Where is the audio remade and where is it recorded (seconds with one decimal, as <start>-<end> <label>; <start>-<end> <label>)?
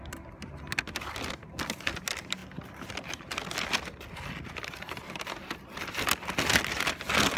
0.0-7.4 recorded